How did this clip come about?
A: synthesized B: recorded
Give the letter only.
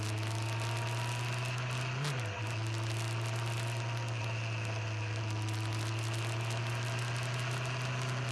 B